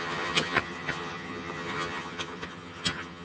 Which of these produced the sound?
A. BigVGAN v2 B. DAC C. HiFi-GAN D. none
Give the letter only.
C